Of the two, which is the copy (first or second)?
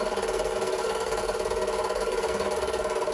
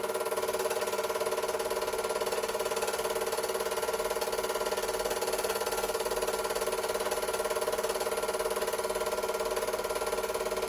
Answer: first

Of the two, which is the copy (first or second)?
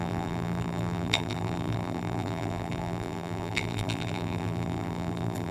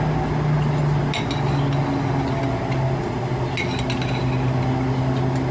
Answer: first